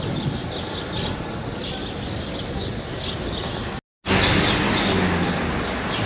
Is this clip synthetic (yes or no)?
no